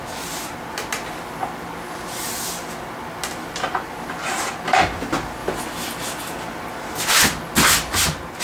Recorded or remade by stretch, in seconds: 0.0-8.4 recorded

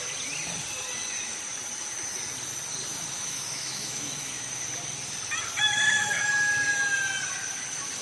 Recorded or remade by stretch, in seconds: 0.0-2.9 recorded; 2.9-4.5 remade; 4.5-8.0 recorded

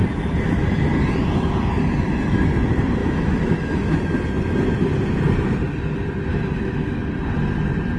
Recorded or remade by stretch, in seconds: 0.0-3.0 recorded; 3.0-3.9 remade; 3.9-6.3 recorded; 6.3-7.0 remade; 7.0-8.0 recorded

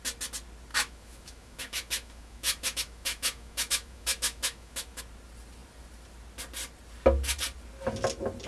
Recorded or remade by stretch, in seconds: 0.0-0.7 recorded; 0.7-5.0 remade; 5.0-8.5 recorded

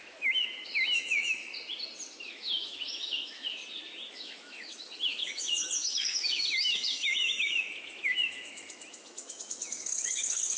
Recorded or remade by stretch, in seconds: 0.0-1.5 remade; 1.5-2.3 recorded; 2.3-3.6 remade; 3.6-4.1 recorded; 4.1-10.6 remade

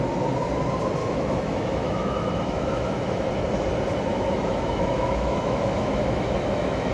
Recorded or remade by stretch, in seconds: 0.0-1.0 recorded; 1.0-3.3 remade; 3.3-4.1 recorded; 4.1-6.9 remade